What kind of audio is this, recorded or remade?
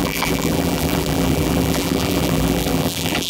remade